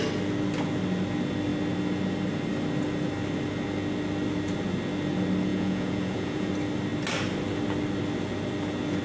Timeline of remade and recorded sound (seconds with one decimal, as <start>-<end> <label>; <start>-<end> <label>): 0.0-5.5 recorded; 5.5-6.5 remade; 6.5-9.0 recorded